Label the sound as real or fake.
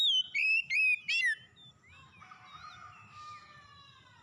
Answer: real